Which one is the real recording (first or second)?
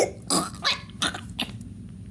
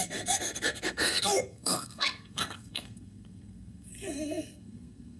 first